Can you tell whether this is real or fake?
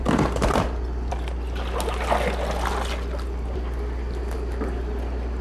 real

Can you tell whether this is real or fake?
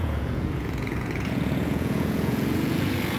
fake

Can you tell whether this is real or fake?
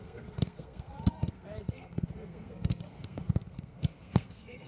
fake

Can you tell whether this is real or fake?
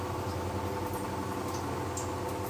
real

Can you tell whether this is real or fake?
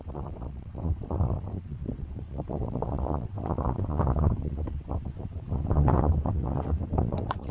fake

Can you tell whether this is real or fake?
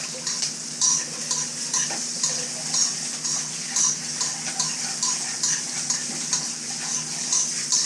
real